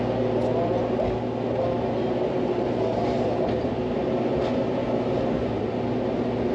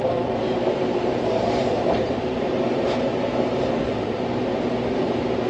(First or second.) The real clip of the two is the first